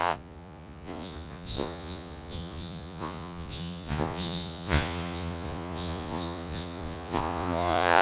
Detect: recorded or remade remade